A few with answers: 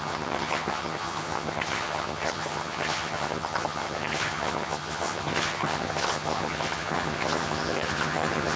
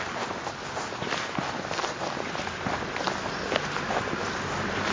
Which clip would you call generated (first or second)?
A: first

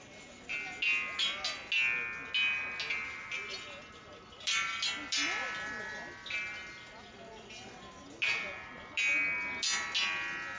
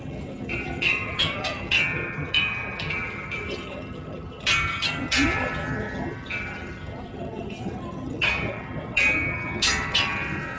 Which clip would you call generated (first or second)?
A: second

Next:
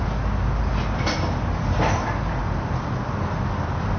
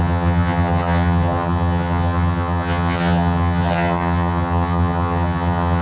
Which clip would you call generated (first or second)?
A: second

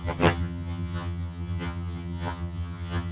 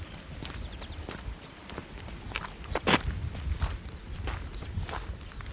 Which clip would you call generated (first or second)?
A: first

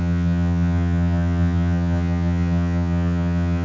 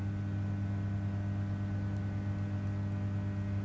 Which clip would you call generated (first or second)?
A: first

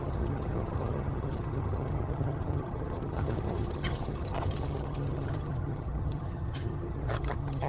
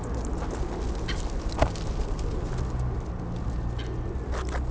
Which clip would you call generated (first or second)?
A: first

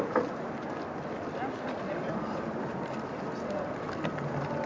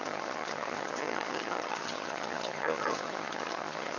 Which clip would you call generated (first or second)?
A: second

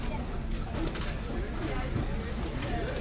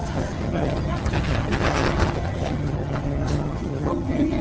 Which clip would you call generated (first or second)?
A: second